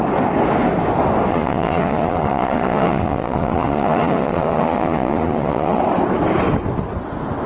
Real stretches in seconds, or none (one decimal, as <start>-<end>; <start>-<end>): 0.0-1.3; 5.8-7.5